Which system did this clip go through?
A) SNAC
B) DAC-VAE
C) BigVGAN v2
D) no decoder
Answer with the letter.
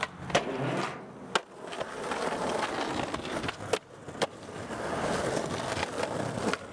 D